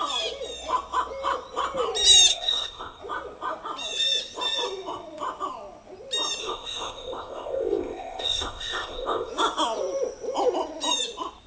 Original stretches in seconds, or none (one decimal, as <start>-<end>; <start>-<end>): 0.0-2.3; 3.0-6.4; 9.3-11.5